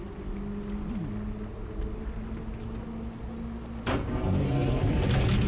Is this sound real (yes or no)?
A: yes